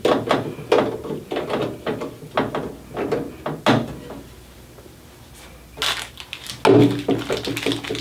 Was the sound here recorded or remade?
recorded